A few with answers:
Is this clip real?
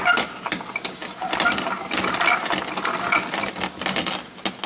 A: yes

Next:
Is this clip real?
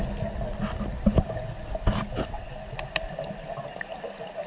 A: yes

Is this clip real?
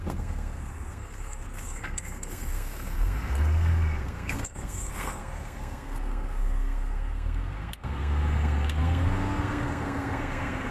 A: no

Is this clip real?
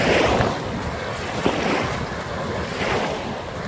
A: yes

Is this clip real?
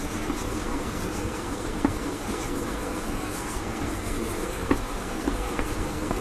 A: no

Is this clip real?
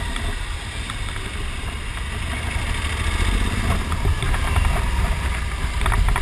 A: yes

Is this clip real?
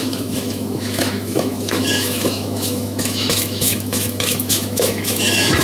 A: no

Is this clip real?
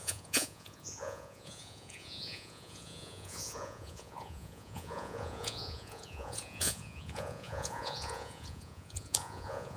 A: no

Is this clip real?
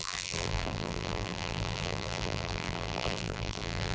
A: no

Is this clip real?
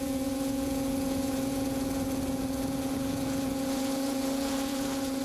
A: no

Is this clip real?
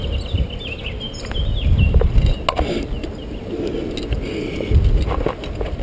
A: yes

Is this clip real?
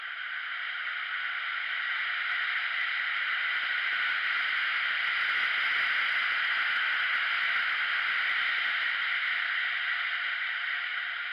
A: yes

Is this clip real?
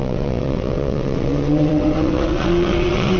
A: no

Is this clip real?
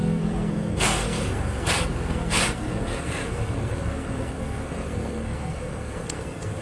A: no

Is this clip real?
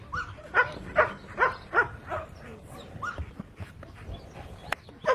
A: yes